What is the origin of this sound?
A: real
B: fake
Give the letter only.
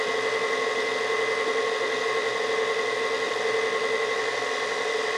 A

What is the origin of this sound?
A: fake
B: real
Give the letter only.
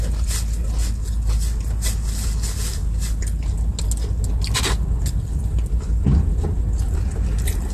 B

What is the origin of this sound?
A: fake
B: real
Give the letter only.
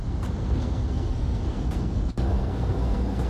A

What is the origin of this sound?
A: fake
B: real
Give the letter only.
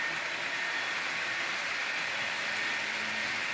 B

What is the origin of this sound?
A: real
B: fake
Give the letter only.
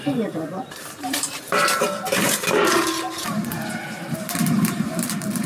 B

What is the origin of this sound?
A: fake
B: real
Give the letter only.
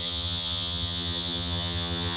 A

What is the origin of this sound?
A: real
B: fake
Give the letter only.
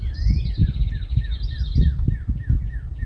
A